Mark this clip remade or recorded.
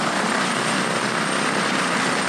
recorded